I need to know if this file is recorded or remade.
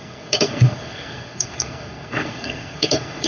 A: remade